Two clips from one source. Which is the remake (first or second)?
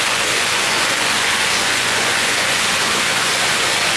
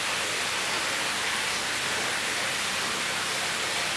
first